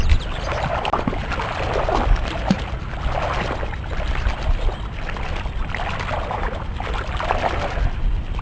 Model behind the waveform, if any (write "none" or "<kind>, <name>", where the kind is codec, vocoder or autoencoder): none